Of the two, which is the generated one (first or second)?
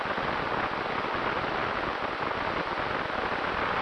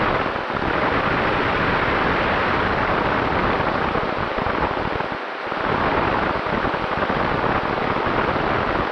second